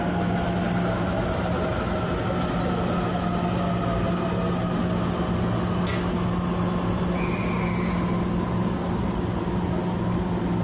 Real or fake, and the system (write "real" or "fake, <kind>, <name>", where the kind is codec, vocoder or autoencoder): real